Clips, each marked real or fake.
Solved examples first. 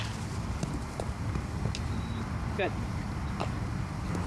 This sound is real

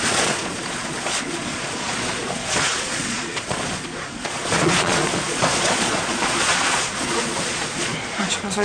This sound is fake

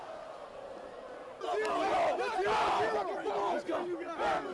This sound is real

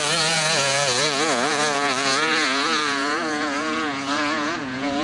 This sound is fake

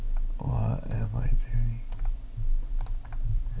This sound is real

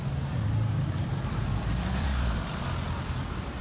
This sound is fake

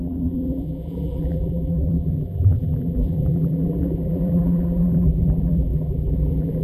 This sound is fake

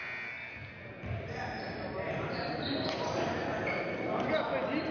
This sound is real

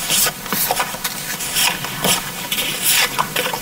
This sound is real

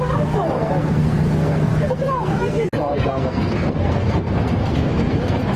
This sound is fake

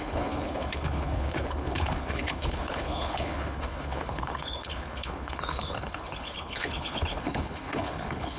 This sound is fake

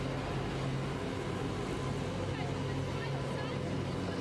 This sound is real